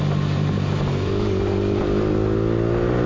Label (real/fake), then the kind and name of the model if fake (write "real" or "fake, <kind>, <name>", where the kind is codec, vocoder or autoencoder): real